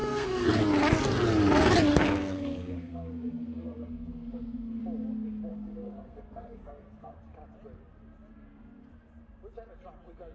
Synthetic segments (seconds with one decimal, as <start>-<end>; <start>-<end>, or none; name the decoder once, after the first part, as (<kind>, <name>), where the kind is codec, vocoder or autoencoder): 0.0-0.6 (codec, SNAC); 1.9-4.8; 5.5-7.2